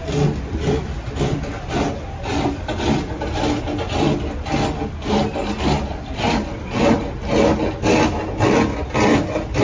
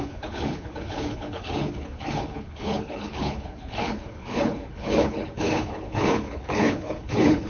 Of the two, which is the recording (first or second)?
first